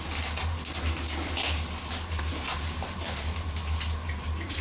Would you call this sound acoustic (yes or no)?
yes